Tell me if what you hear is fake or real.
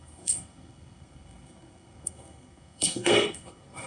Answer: fake